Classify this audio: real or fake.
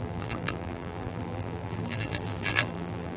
fake